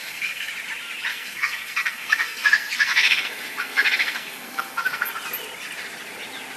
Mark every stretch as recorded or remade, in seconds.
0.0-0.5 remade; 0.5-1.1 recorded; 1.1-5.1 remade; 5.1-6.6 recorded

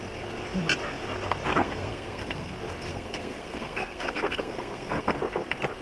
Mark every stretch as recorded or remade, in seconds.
0.0-1.5 recorded; 1.5-2.5 remade; 2.5-2.9 recorded; 2.9-5.2 remade; 5.2-5.8 recorded

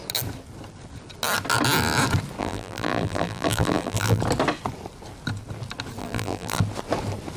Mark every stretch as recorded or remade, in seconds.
0.0-2.4 recorded; 2.4-4.2 remade; 4.2-6.0 recorded; 6.0-6.6 remade; 6.6-7.4 recorded

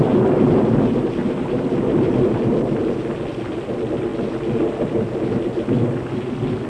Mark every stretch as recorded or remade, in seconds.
0.0-6.7 recorded

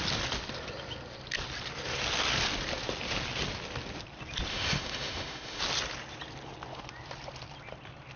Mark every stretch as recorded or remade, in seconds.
0.0-4.5 recorded; 4.5-5.6 remade; 5.6-8.2 recorded